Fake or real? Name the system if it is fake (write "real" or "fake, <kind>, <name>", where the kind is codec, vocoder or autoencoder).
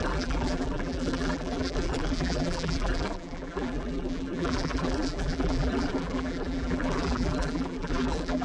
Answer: fake, vocoder, BigVGAN v2